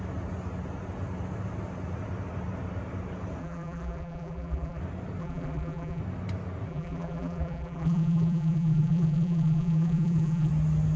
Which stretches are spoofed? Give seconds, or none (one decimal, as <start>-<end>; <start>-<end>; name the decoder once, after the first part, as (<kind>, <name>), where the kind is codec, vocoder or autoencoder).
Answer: 3.4-4.8 (vocoder, BigVGAN v2); 5.2-6.0; 6.7-10.5